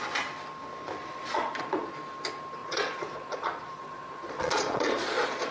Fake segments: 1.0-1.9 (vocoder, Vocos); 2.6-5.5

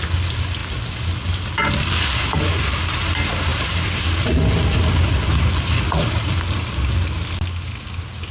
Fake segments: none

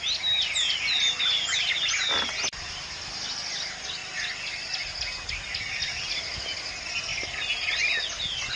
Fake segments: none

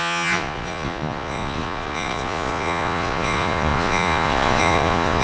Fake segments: 0.0-5.2 (vocoder, Vocos)

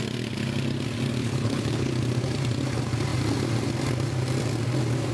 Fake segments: 1.2-1.9 (codec, HILCodec)